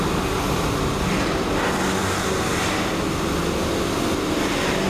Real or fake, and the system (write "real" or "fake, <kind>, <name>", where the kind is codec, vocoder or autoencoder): real